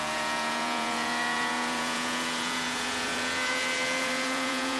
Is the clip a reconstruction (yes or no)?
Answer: yes